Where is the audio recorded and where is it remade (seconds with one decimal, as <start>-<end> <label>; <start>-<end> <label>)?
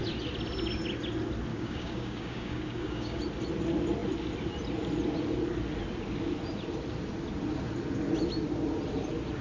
0.0-1.5 recorded; 1.5-3.2 remade; 3.2-9.4 recorded